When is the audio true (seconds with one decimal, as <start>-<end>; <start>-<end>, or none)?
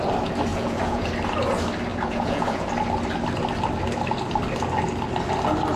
0.0-0.5; 1.1-1.9; 2.7-5.8